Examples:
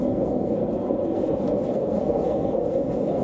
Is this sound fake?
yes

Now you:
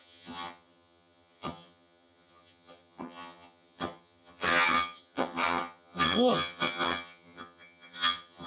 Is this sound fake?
yes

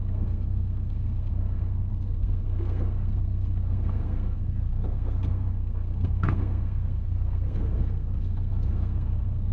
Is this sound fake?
yes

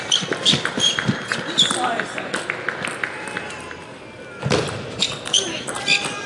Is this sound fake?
no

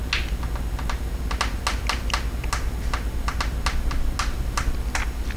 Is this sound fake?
no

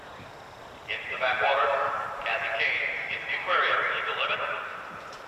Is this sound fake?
yes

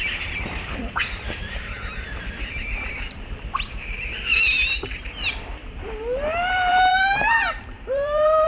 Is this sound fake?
yes